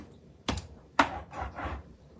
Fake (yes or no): yes